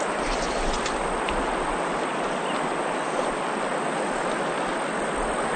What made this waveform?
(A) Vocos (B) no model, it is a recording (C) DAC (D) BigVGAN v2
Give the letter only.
B